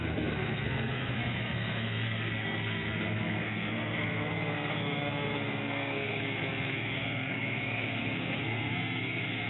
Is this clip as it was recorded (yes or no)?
no